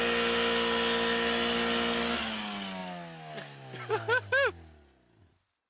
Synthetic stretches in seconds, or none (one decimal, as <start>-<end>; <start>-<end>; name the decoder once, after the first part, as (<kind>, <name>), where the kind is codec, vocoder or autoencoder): none